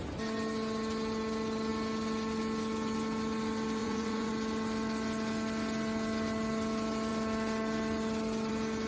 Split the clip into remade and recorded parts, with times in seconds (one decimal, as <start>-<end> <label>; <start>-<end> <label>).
0.0-3.8 recorded; 3.8-4.3 remade; 4.3-8.9 recorded